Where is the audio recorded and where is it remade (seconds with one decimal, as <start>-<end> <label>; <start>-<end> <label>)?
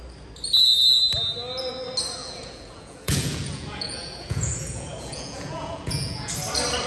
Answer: 0.0-2.2 recorded; 2.2-6.3 remade; 6.3-6.9 recorded